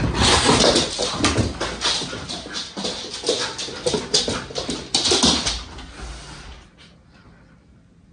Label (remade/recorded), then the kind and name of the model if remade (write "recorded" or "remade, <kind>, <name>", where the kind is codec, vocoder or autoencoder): recorded